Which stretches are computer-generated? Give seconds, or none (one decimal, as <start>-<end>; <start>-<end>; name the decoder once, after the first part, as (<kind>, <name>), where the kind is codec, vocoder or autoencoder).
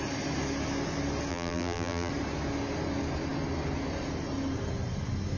1.3-2.1 (vocoder, BigVGAN v2)